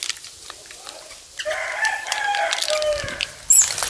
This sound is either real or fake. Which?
real